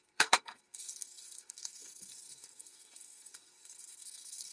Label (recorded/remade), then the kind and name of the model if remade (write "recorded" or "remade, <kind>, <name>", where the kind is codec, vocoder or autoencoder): remade, codec, SNAC